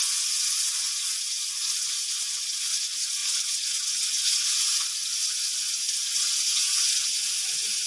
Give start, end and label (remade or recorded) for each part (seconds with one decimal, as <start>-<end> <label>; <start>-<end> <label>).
0.0-7.9 remade